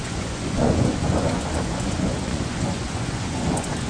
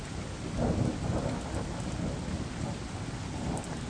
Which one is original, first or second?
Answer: second